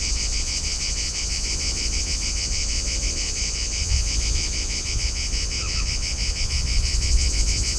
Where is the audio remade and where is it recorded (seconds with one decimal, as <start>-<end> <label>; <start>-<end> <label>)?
0.0-7.8 remade

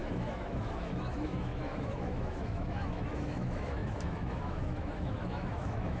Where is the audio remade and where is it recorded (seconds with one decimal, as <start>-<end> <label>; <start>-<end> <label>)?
0.0-6.0 remade

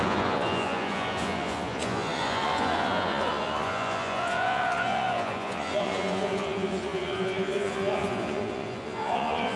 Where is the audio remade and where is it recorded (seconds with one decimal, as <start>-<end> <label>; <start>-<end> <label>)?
0.0-9.6 remade